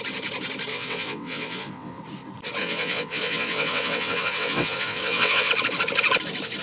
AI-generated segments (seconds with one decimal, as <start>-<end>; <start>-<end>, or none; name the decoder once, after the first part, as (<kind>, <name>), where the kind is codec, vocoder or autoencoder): 0.7-2.0 (vocoder, WaveNeXt); 2.6-5.5